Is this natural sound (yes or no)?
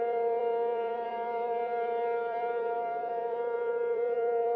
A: no